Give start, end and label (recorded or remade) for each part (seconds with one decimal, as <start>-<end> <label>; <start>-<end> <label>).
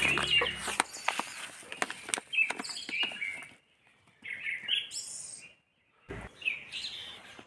0.0-7.5 recorded